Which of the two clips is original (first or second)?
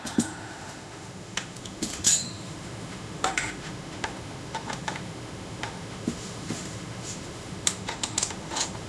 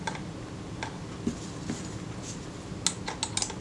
second